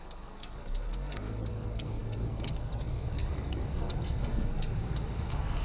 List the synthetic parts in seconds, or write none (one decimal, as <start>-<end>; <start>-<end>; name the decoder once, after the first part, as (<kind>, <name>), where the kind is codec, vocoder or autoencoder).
0.0-5.6 (codec, SNAC)